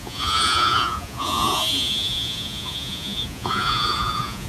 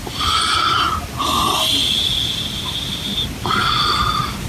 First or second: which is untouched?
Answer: second